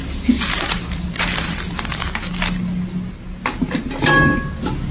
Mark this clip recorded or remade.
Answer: recorded